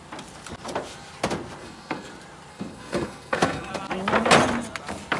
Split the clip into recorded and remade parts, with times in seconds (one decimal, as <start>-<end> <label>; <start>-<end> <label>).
0.0-1.6 recorded; 1.6-2.1 remade; 2.1-2.5 recorded; 2.5-3.7 remade; 3.7-5.2 recorded